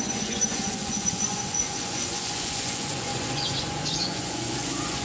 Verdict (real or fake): fake